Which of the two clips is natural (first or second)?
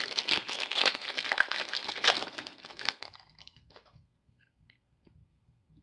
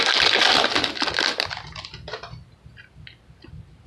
second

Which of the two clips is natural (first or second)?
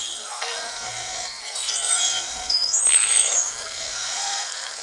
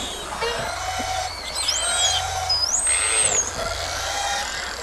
second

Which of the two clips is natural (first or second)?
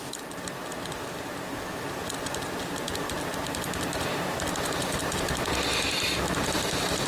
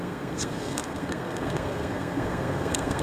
first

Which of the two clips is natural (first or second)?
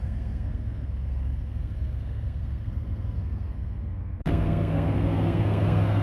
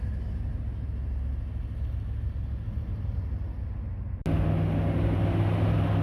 second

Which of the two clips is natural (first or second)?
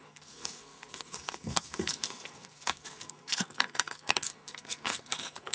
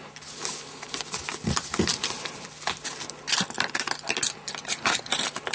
second